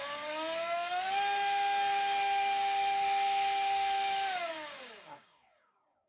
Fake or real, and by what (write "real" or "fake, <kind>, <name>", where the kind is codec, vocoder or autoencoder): fake, codec, DAC